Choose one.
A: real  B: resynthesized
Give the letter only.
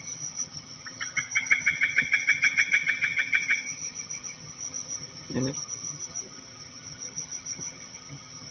B